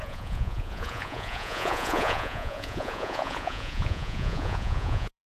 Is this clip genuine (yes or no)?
no